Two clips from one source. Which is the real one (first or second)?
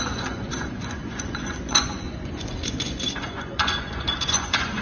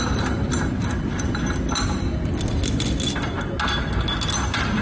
second